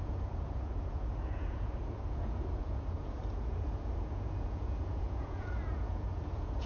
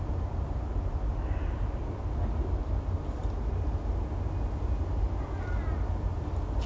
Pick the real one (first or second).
second